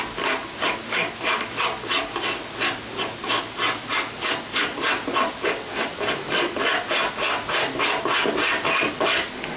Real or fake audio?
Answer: real